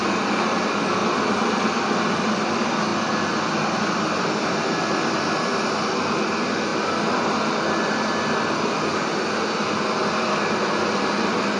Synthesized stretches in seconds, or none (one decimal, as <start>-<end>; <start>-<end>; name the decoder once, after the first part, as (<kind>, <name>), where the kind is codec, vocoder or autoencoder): none